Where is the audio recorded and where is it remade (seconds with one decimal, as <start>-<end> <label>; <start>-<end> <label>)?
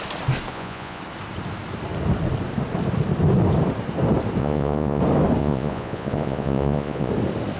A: 0.0-0.5 recorded; 0.5-1.0 remade; 1.0-4.4 recorded; 4.4-5.0 remade; 5.0-5.4 recorded; 5.4-7.1 remade; 7.1-7.6 recorded